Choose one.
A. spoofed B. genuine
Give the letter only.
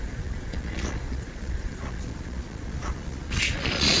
A